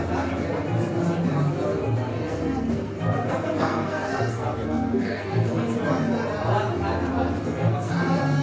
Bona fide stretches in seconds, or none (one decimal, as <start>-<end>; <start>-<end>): 0.0-2.1; 5.8-7.1; 7.9-8.4